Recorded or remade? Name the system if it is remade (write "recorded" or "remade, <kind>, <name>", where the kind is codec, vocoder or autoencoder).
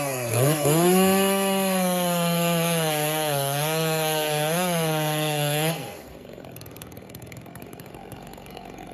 remade, codec, SNAC